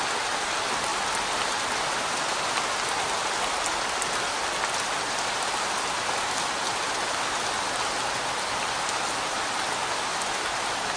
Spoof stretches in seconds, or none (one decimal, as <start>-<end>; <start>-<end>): none